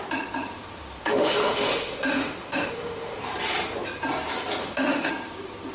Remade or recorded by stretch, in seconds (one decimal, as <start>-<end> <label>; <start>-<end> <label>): 0.0-1.0 recorded; 1.0-3.2 remade; 3.2-4.6 recorded; 4.6-5.1 remade; 5.1-5.7 recorded

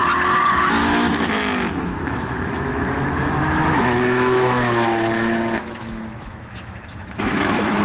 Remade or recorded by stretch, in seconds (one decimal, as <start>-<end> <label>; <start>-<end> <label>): 0.0-0.6 recorded; 0.6-7.8 remade